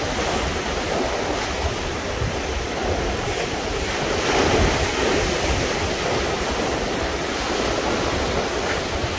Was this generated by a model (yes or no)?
no